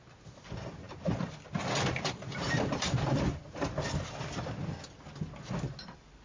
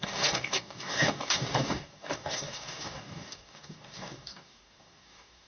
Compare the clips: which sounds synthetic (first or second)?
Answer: second